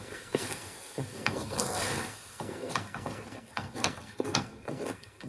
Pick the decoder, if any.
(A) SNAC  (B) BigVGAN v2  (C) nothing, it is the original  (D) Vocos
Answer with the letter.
A